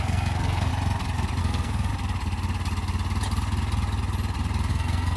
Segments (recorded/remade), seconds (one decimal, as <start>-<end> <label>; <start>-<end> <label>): 0.0-0.7 remade; 0.7-1.4 recorded; 1.4-1.9 remade; 1.9-4.7 recorded; 4.7-5.2 remade